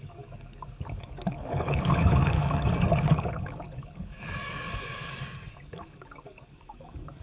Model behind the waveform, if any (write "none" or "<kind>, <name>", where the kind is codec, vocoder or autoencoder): codec, DAC